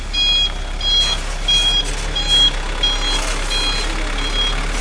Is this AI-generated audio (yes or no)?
no